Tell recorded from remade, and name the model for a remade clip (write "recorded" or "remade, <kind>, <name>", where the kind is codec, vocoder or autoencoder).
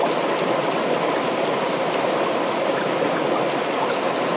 recorded